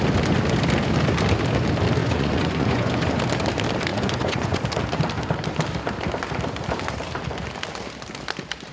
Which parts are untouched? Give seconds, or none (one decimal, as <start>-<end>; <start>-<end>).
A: 0.0-2.0; 3.1-3.9; 4.6-8.7